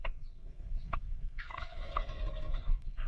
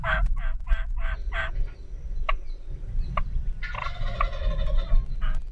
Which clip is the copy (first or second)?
first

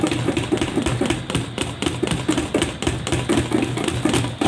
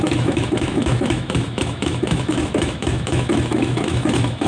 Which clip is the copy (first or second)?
second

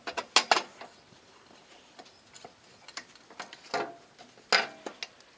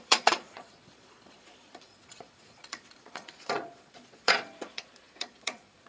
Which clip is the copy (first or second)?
second